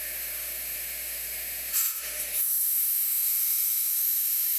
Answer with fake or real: fake